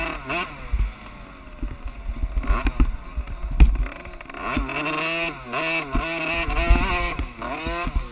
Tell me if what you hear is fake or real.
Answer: real